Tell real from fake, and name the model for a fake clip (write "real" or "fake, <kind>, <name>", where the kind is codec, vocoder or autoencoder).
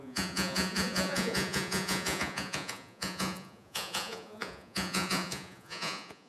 fake, vocoder, Vocos